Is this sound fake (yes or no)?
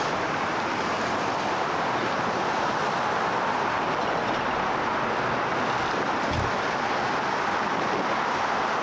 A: no